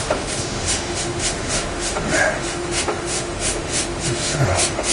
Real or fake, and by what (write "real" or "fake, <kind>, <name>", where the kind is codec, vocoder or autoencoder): fake, autoencoder, DAC-VAE